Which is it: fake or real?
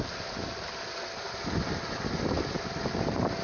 real